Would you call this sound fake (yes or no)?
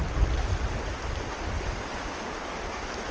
no